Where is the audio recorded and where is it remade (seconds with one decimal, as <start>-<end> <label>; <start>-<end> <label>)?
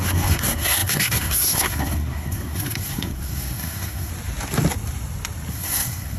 0.0-4.1 remade; 4.1-5.5 recorded; 5.5-6.2 remade